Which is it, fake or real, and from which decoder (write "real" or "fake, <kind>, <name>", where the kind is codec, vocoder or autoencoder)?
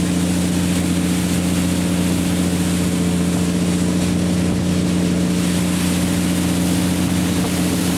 real